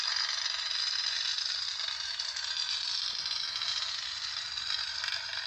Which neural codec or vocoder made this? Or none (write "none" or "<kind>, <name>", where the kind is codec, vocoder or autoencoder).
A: none